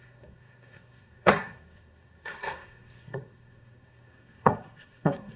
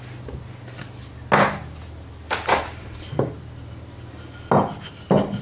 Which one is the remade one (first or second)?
first